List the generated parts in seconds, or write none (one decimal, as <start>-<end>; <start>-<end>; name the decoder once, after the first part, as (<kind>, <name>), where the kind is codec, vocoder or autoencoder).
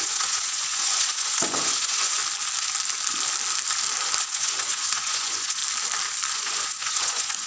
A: 0.0-2.2 (vocoder, Vocos); 4.2-5.6; 6.3-7.5